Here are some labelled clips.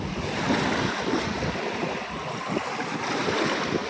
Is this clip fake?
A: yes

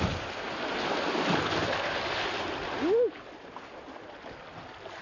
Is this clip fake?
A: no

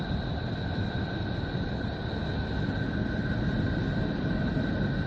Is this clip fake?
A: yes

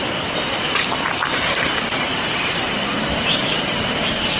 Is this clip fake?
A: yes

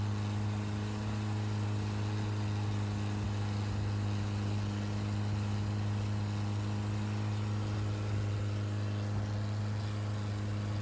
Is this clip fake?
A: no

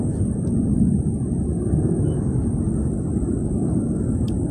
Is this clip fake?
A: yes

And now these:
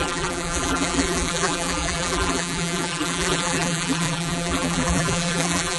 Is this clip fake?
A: yes